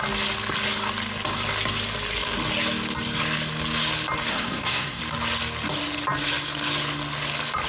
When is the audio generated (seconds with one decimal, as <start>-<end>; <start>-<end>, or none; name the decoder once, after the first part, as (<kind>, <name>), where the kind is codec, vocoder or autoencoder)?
4.3-5.0 (codec, SNAC)